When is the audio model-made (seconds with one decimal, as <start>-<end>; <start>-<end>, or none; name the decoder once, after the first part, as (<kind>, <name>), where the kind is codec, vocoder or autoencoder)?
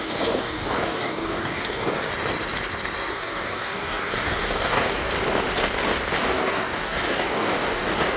0.0-2.1 (codec, DAC); 3.1-5.1; 6.2-8.2